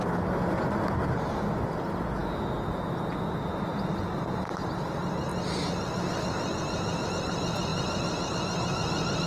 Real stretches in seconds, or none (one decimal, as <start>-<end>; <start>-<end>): 0.0-3.7; 4.5-9.3